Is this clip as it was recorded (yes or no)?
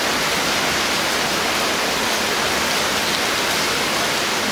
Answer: yes